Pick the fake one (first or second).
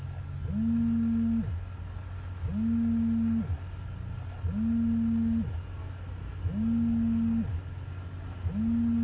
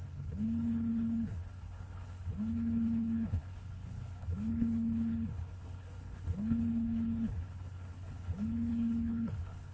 second